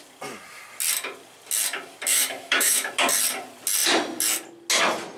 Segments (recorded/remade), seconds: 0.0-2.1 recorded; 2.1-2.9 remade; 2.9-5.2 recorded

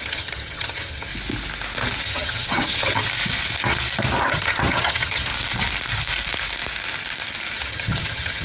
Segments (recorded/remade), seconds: 0.0-1.1 remade; 1.1-2.0 recorded; 2.0-2.9 remade; 2.9-4.3 recorded; 4.3-5.3 remade; 5.3-7.6 recorded; 7.6-8.4 remade

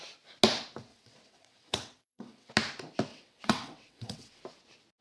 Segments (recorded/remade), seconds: 0.0-0.9 recorded; 0.9-2.5 remade; 2.5-3.1 recorded; 3.1-4.4 remade; 4.4-5.0 recorded

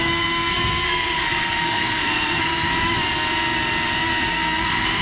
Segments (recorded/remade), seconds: 0.0-2.7 remade; 2.7-4.3 recorded; 4.3-5.0 remade